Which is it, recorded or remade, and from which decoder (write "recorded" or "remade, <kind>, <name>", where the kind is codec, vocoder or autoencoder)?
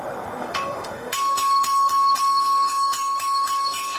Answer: remade, autoencoder, DAC-VAE